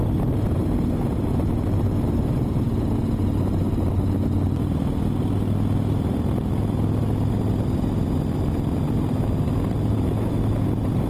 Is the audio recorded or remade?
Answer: recorded